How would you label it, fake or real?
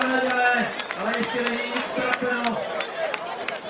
real